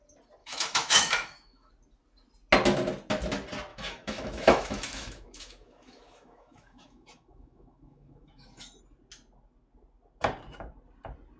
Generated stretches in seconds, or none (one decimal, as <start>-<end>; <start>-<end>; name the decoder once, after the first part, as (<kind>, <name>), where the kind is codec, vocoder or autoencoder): 0.4-1.7 (autoencoder, DAC-VAE); 3.7-8.8

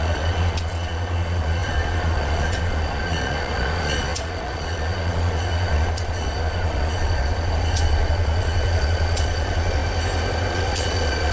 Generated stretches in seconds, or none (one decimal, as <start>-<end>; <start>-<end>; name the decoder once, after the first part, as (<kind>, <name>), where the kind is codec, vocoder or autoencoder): 0.0-9.8 (vocoder, Vocos); 10.5-11.3

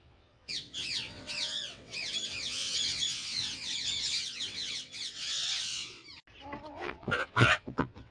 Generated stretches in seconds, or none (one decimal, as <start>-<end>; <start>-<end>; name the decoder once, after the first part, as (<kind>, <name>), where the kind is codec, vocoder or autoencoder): 0.0-6.0 (vocoder, WaveNeXt); 6.7-8.1

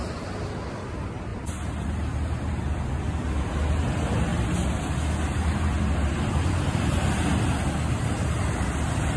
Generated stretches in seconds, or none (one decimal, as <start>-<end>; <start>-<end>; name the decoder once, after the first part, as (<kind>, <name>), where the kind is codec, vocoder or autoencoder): none

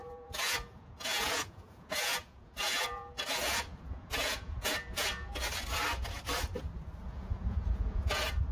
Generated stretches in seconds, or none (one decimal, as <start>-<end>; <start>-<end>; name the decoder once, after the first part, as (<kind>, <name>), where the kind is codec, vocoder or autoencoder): 0.0-5.3 (vocoder, Vocos); 7.0-8.5

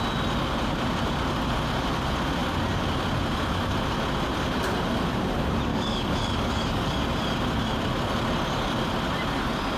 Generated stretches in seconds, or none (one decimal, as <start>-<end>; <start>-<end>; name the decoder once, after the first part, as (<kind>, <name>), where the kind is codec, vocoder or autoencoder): 5.7-6.9 (codec, DAC)

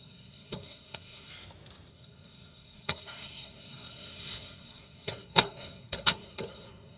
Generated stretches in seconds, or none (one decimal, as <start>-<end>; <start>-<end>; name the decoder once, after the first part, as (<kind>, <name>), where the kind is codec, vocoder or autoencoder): 0.0-1.3 (codec, SNAC); 1.9-7.0